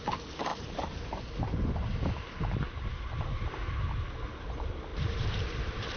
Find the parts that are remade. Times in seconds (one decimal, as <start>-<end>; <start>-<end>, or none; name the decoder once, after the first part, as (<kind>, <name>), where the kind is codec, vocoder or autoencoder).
0.5-1.2 (vocoder, BigVGAN v2); 4.9-6.0